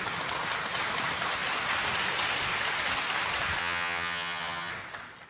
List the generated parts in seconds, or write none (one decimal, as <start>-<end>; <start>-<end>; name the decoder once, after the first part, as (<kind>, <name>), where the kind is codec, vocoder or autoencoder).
3.6-4.7 (vocoder, HiFi-GAN)